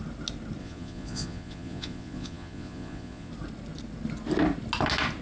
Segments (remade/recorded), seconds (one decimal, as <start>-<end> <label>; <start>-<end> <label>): 0.0-0.6 recorded; 0.6-3.3 remade; 3.3-5.2 recorded